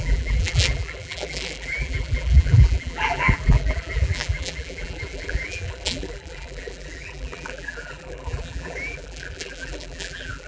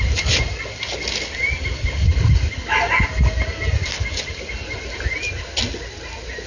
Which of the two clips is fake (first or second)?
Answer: first